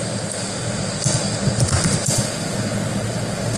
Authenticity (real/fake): real